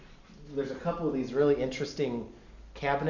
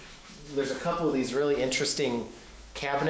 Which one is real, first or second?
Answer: first